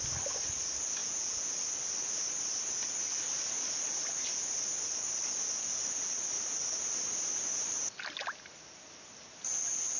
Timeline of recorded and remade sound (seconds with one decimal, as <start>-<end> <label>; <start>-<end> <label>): 0.0-1.0 recorded; 1.0-1.5 remade; 1.5-10.0 recorded